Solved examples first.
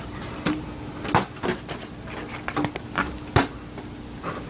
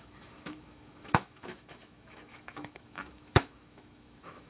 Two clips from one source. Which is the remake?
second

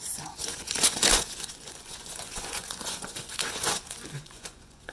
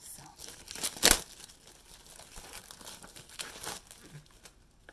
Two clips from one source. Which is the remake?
first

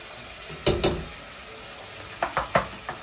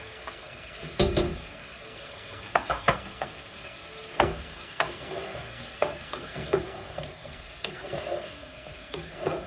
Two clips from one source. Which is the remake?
second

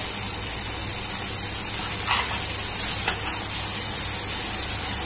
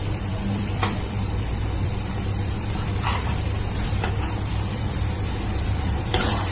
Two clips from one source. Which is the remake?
second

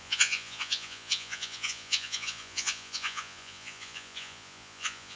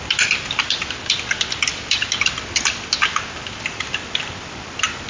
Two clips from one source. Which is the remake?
first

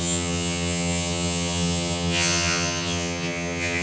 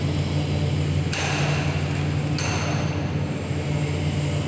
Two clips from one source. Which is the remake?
first